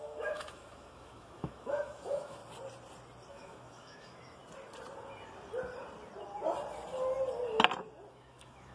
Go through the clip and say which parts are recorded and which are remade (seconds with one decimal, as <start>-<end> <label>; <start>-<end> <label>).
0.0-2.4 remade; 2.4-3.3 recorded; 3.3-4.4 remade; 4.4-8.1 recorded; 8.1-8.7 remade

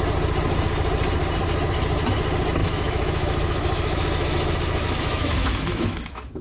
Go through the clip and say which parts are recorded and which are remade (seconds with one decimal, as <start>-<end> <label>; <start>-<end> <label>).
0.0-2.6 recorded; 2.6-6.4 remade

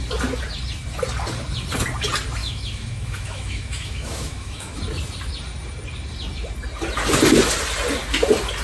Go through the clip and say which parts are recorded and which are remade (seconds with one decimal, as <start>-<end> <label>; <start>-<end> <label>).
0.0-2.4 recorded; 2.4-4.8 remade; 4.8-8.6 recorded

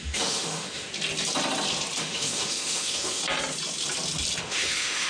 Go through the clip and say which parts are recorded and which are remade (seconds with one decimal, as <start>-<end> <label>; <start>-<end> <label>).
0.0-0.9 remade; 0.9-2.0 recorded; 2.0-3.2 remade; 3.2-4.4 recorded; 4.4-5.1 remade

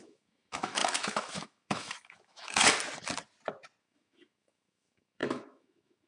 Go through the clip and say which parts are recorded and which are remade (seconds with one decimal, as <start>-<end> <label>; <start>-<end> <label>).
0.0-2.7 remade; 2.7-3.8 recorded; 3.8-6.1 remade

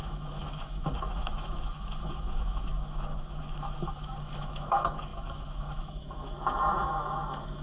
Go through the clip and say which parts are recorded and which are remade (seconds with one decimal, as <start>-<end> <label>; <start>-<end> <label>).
0.0-7.6 remade